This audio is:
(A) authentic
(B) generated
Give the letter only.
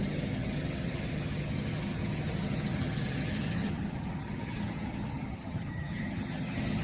B